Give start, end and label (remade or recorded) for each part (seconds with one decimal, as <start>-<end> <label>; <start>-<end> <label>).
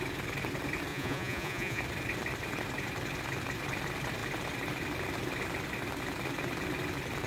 0.0-0.9 recorded; 0.9-1.8 remade; 1.8-7.3 recorded